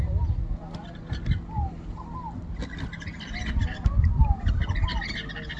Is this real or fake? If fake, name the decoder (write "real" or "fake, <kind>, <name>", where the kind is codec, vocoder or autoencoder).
real